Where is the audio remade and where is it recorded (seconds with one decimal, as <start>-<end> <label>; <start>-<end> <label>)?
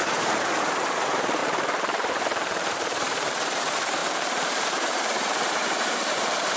0.0-6.6 remade